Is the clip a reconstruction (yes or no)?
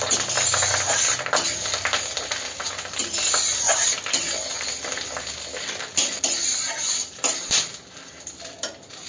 no